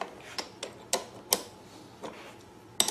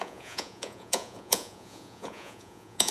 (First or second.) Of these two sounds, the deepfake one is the second